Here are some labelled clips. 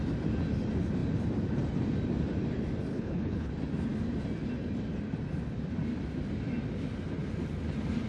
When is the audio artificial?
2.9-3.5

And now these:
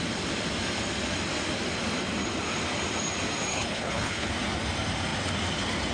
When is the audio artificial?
3.5-4.3

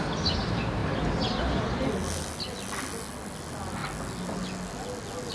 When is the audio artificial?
none

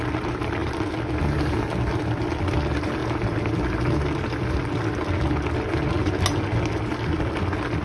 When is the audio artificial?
none

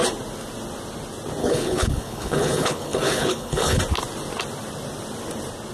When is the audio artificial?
1.4-3.8

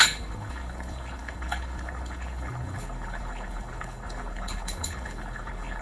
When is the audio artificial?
0.0-5.8

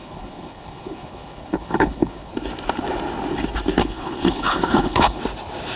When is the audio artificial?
0.0-2.3; 3.8-5.2

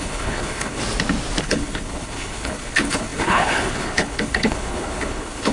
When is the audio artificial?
0.0-0.8; 1.4-5.5